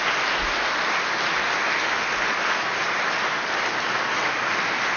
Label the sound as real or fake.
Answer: real